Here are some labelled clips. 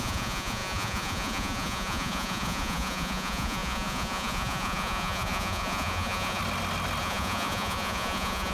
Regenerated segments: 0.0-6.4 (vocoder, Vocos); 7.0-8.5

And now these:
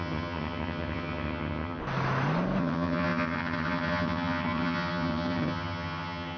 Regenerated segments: 0.0-1.8 (vocoder, HiFi-GAN); 2.6-6.4

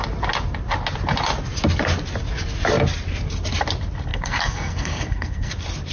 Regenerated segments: 4.1-5.5 (codec, SNAC)

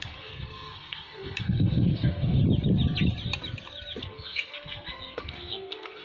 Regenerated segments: 0.0-2.4 (codec, SNAC); 4.0-6.0

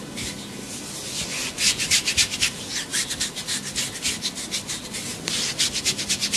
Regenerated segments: 1.1-1.9 (vocoder, Vocos)

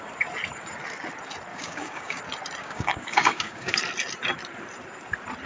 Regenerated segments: 1.5-2.2 (codec, DAC); 2.6-3.8

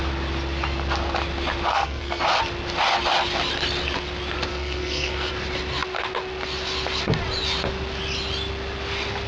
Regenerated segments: 1.7-2.2 (codec, SNAC); 4.5-5.3

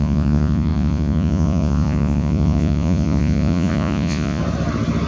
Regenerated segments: 0.0-4.4 (vocoder, Vocos)